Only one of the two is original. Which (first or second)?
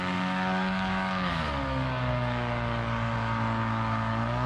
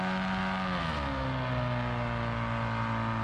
second